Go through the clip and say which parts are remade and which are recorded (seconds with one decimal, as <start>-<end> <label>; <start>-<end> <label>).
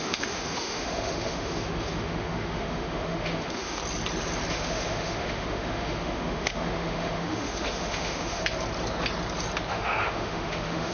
0.0-3.8 remade; 3.8-4.5 recorded; 4.5-8.4 remade; 8.4-9.7 recorded; 9.7-10.9 remade